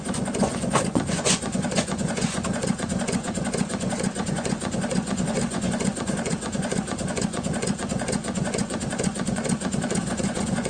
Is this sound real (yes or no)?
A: no